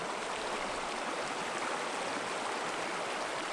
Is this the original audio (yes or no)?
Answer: yes